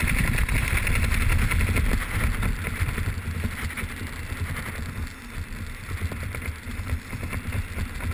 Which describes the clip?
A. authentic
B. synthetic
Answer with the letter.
A